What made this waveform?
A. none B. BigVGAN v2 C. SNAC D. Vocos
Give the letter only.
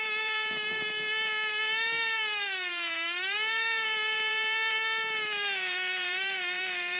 B